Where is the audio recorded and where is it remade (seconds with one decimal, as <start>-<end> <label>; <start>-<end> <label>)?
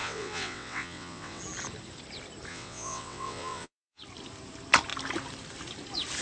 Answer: 0.0-1.4 remade; 1.4-2.5 recorded; 2.5-4.0 remade; 4.0-6.2 recorded